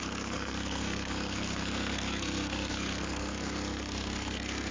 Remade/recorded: remade